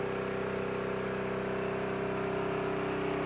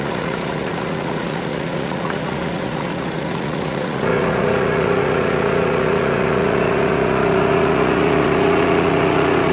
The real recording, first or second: first